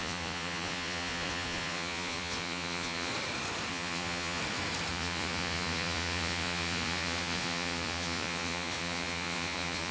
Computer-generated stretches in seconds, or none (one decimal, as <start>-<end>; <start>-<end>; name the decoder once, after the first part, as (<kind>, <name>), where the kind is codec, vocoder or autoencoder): 0.0-3.1 (vocoder, Vocos); 3.7-4.4; 4.9-9.9